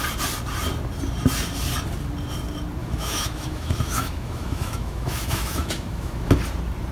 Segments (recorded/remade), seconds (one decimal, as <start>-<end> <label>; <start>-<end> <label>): 0.0-2.8 recorded; 2.8-6.3 remade; 6.3-6.9 recorded

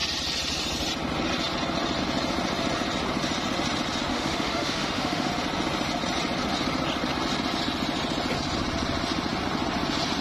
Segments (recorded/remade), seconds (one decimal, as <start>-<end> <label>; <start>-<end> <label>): 0.0-4.1 recorded; 4.1-5.3 remade; 5.3-10.2 recorded

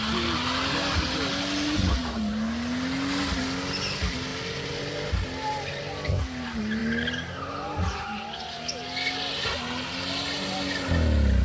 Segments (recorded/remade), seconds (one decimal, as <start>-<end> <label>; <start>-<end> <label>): 0.0-11.4 recorded